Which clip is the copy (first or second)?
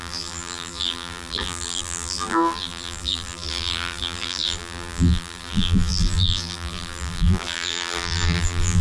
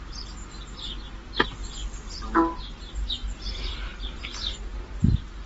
first